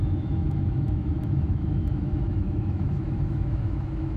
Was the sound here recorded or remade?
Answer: remade